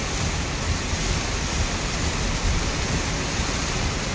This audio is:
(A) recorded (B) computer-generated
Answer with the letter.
A